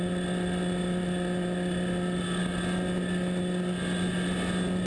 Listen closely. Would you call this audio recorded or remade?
recorded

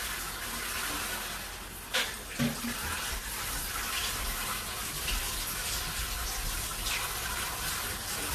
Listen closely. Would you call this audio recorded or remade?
recorded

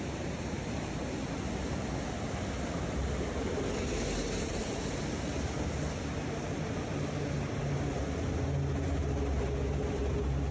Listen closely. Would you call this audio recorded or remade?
recorded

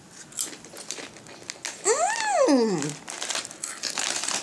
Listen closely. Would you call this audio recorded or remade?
recorded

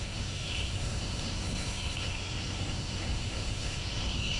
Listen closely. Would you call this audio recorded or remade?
remade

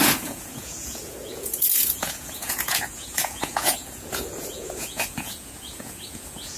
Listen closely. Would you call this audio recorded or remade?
remade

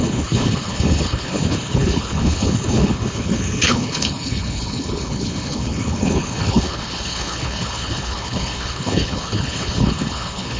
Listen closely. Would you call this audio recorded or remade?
remade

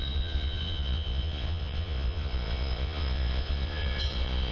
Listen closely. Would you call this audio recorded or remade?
remade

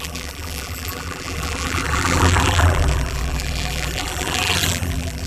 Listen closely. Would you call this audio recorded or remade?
remade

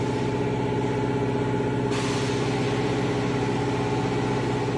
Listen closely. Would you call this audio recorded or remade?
recorded